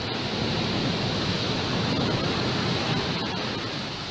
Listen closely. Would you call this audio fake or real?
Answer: real